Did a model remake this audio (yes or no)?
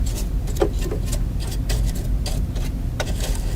no